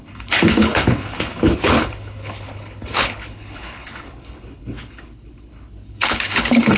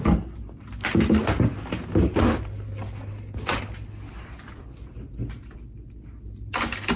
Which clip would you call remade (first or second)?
first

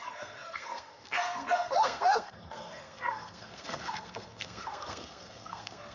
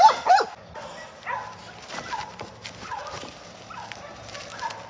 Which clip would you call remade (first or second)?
first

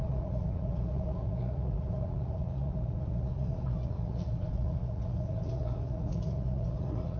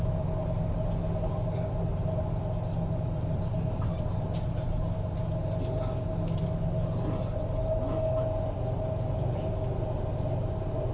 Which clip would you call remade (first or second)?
first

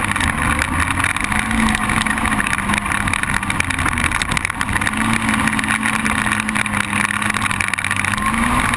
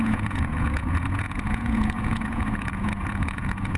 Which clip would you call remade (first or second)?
second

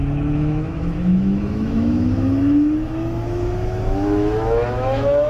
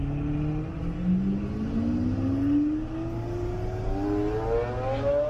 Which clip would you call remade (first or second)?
first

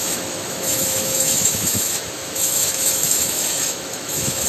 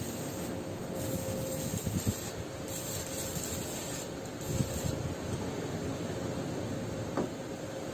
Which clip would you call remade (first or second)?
first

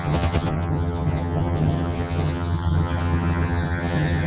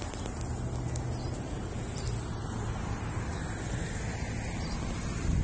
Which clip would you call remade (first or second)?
first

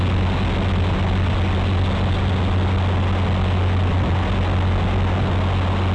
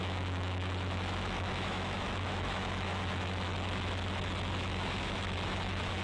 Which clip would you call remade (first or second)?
second